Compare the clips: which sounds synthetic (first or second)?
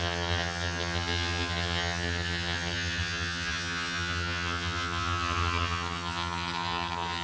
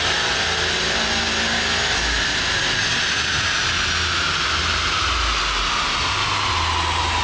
first